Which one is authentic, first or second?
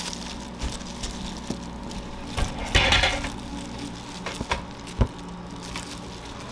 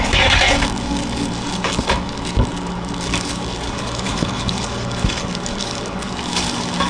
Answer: first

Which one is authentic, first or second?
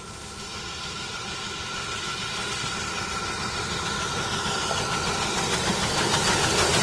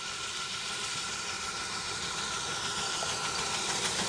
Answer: first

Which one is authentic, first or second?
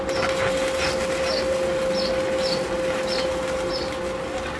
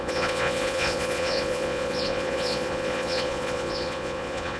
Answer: first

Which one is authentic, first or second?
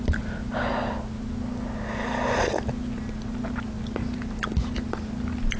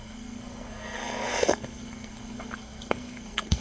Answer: first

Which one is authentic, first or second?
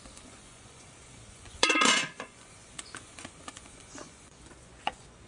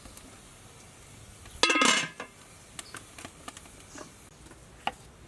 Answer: second